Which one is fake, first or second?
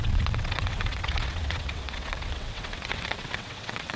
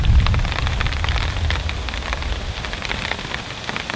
first